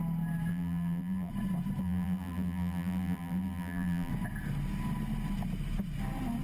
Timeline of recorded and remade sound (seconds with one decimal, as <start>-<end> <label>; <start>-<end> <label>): 0.0-0.5 recorded; 0.5-1.3 remade; 1.3-1.8 recorded; 1.8-4.1 remade; 4.1-6.4 recorded